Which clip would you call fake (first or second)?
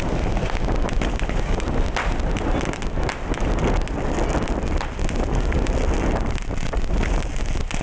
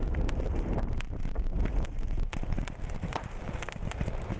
second